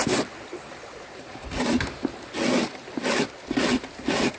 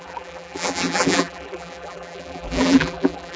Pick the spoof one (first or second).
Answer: second